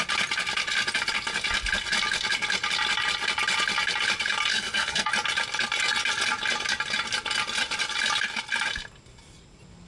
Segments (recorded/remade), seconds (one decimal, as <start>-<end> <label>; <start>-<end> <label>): 0.0-4.5 recorded; 4.5-5.1 remade; 5.1-9.9 recorded